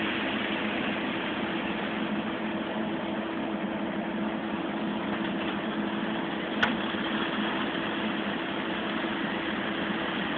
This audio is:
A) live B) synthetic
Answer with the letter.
A